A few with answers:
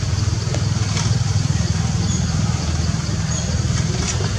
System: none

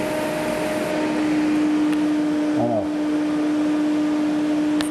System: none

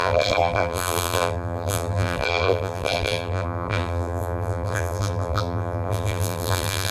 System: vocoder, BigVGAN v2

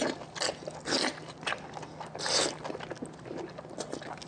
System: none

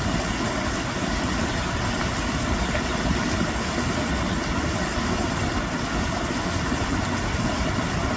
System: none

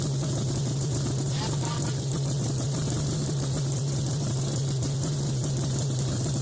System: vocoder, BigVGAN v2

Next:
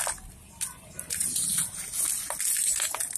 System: none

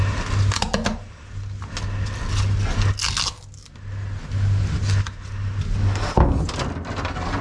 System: none